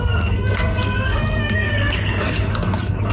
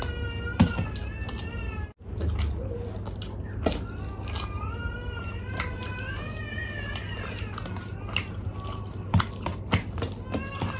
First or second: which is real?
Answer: second